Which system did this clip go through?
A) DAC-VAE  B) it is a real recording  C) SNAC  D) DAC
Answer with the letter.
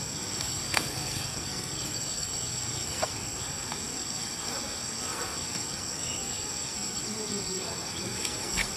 C